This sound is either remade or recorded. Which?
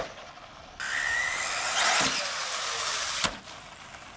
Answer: recorded